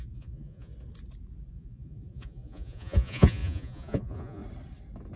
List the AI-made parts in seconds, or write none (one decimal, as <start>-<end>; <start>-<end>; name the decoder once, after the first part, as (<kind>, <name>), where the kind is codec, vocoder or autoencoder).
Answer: 0.0-0.7 (vocoder, Vocos); 1.5-4.4